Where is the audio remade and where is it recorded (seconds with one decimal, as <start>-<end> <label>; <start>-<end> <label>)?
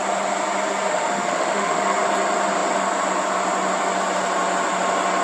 0.0-0.9 recorded; 0.9-1.8 remade; 1.8-5.2 recorded